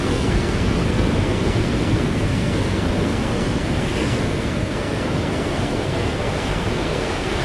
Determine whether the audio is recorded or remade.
remade